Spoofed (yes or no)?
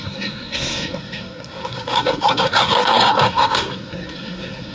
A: yes